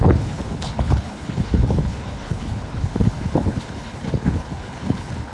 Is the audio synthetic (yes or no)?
yes